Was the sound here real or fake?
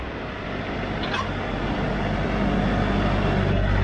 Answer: real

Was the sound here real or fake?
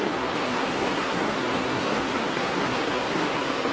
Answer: fake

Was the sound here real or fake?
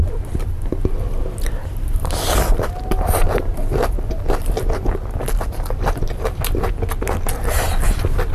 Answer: real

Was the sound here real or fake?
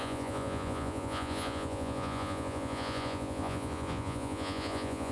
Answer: fake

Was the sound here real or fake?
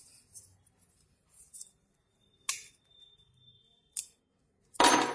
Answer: real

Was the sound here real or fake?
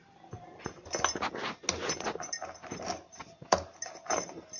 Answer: real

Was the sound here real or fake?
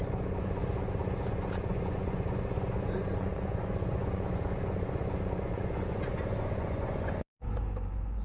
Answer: fake